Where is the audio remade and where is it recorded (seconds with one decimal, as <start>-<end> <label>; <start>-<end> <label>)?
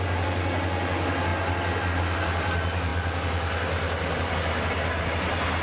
0.0-5.6 recorded